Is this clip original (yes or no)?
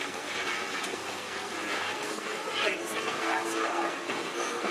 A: no